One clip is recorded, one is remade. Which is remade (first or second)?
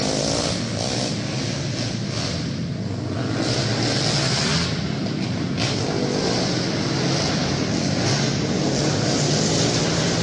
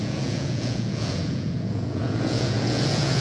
second